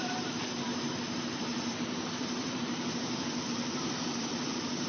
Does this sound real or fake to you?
fake